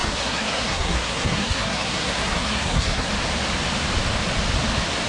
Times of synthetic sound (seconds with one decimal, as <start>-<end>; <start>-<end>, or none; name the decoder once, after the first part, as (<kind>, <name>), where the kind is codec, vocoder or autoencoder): 0.0-3.1 (codec, SNAC)